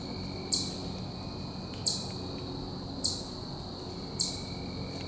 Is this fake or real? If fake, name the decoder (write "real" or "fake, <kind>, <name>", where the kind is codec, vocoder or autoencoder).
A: real